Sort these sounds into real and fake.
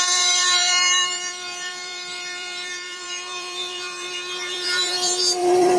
fake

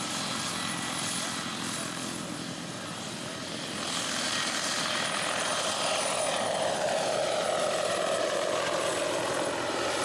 real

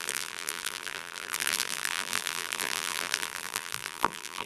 fake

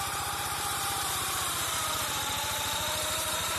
fake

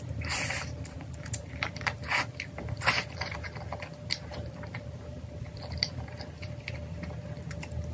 fake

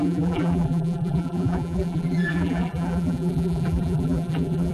fake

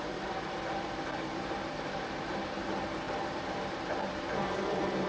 fake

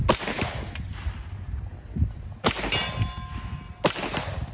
real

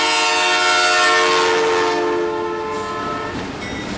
real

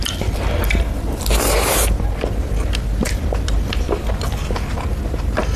real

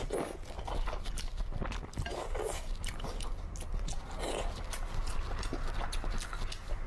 real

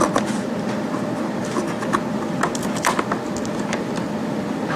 real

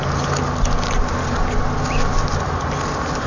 real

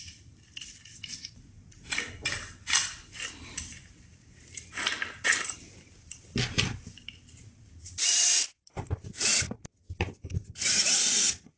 fake